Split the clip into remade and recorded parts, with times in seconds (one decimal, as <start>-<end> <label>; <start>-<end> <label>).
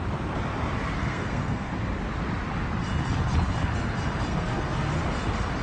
0.0-1.0 recorded; 1.0-1.7 remade; 1.7-4.3 recorded; 4.3-4.9 remade; 4.9-5.6 recorded